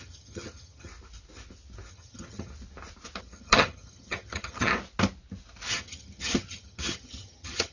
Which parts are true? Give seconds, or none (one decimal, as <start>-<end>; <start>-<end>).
0.9-1.9; 2.5-3.2; 4.7-5.7